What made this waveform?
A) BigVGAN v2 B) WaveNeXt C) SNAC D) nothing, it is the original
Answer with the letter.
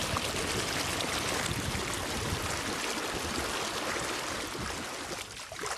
D